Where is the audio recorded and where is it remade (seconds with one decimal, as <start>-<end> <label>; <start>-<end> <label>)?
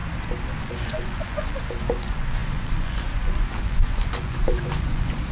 0.0-0.6 recorded; 0.6-5.3 remade